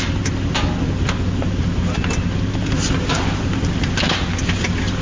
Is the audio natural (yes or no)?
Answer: yes